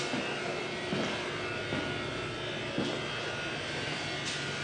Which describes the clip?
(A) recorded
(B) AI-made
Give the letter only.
A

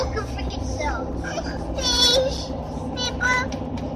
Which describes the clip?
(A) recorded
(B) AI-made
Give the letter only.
A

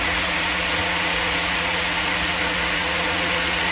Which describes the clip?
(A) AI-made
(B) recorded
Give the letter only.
A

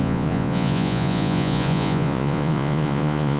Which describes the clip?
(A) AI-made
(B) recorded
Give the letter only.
A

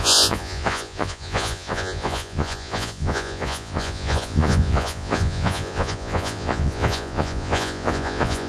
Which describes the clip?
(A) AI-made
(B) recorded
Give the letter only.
A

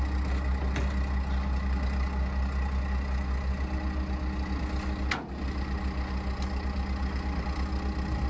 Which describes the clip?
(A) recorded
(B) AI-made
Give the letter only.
A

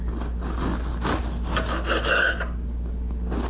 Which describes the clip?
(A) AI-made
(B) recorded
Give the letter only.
B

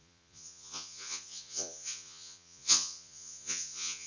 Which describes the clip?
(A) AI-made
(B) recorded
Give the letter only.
A